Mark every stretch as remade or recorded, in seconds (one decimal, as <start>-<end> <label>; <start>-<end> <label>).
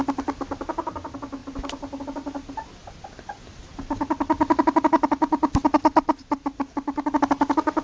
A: 0.0-7.8 recorded